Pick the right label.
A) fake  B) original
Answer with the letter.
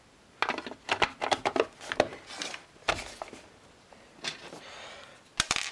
B